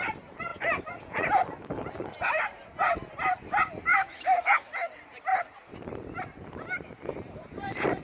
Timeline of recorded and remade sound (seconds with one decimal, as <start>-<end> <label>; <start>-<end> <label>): 0.0-3.9 recorded; 3.9-4.7 remade; 4.7-8.0 recorded